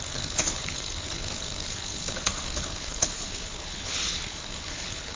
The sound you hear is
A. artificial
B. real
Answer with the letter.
A